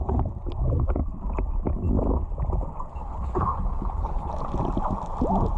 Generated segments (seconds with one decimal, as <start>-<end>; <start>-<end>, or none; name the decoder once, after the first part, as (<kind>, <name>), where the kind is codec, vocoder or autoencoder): 2.9-4.3 (codec, HILCodec)